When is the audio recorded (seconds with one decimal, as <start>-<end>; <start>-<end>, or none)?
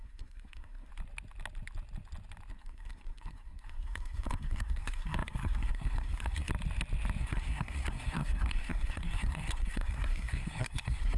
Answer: 0.9-2.5; 6.5-7.2